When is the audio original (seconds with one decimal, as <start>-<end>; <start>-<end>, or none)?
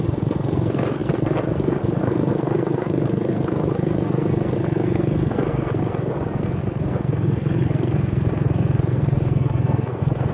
none